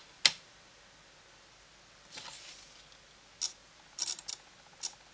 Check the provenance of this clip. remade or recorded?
recorded